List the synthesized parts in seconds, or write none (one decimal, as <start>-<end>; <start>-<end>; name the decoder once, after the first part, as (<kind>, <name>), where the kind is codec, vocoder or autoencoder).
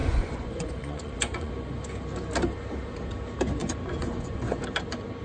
0.0-1.5 (vocoder, Vocos); 3.6-4.6